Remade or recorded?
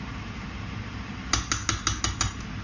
recorded